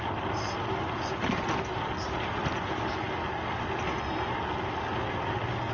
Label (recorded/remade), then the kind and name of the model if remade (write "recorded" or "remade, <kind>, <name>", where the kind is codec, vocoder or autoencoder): recorded